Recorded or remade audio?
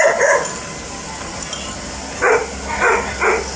recorded